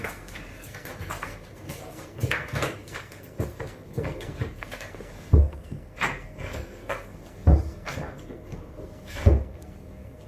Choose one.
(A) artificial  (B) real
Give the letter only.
A